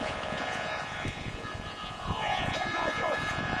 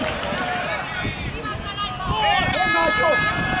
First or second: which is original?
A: second